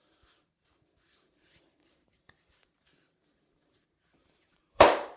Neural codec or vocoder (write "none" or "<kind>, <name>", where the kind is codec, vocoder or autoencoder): vocoder, BigVGAN v2